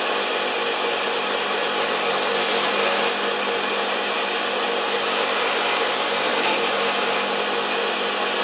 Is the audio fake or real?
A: real